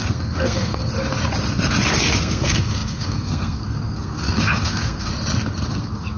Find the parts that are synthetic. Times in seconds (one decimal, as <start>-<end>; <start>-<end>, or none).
0.0-0.8; 2.2-5.1; 5.7-6.2